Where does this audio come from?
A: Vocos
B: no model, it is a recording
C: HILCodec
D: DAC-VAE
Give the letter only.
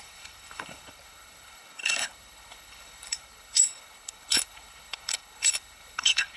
C